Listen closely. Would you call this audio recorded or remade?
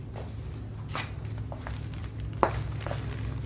recorded